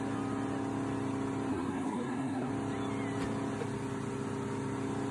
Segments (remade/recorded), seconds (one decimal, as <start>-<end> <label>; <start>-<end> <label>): 0.0-1.5 recorded; 1.5-2.5 remade; 2.5-5.1 recorded